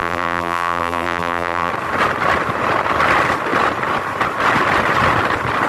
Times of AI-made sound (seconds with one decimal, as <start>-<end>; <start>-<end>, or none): 0.0-1.7